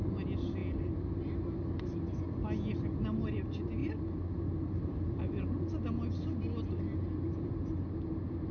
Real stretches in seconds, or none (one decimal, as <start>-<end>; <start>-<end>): 0.0-8.5